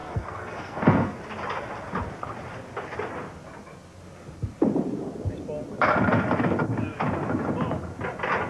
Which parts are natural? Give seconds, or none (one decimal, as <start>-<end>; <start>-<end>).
1.2-8.5